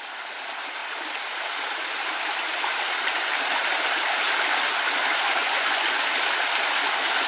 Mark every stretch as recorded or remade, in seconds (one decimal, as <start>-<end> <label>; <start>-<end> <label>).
0.0-5.4 recorded; 5.4-6.1 remade; 6.1-7.3 recorded